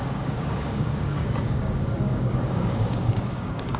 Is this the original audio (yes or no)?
no